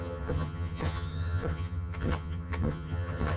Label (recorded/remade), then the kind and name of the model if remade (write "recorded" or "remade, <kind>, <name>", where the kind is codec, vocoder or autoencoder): remade, vocoder, HiFi-GAN